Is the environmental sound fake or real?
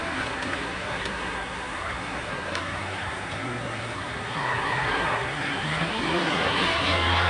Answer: fake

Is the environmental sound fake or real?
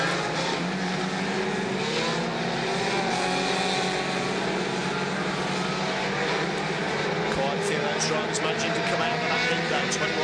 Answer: real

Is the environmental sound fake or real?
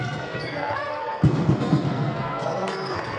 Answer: fake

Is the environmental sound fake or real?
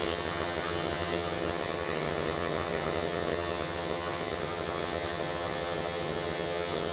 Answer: fake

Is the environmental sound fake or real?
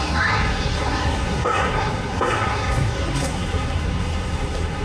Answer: fake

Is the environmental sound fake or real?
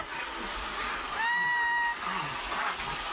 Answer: real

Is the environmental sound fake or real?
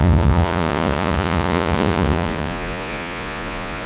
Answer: fake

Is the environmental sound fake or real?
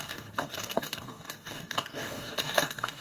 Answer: fake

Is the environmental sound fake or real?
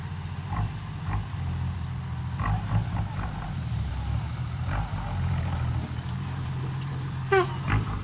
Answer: fake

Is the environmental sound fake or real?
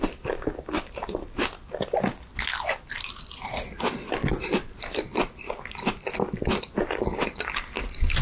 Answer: real